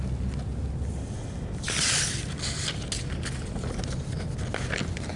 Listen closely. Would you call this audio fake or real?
real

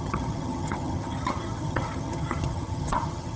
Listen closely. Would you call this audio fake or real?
fake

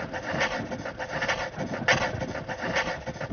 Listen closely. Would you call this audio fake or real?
real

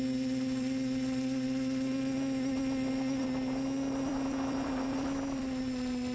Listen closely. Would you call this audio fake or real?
fake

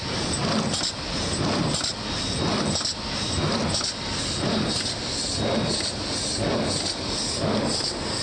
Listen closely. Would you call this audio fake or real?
real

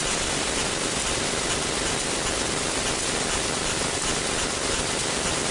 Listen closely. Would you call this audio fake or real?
real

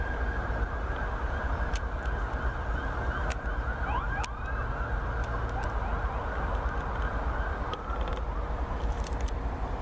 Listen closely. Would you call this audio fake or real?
real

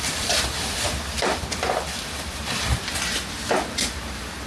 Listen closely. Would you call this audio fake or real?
fake